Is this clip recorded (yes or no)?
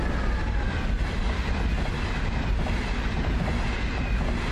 yes